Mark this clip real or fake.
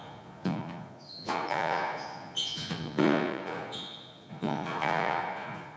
fake